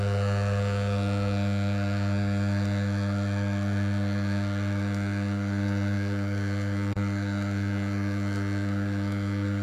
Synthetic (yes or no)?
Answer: yes